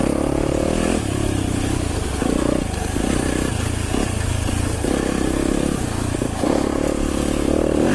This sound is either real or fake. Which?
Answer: real